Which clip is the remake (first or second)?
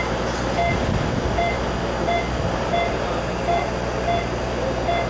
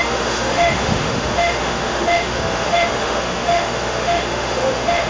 second